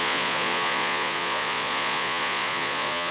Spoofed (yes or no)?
yes